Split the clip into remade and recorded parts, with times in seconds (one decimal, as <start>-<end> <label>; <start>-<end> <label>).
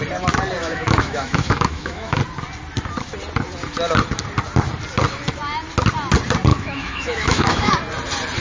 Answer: 0.0-0.6 recorded; 0.6-2.2 remade; 2.2-6.5 recorded; 6.5-7.7 remade; 7.7-8.4 recorded